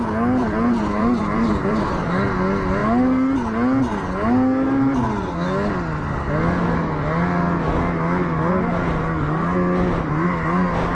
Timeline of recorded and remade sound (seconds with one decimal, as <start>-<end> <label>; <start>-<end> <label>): 0.0-0.4 recorded; 0.4-2.3 remade; 2.3-10.9 recorded